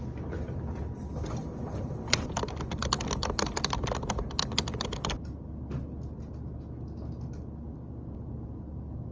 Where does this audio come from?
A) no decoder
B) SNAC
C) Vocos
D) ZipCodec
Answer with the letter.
A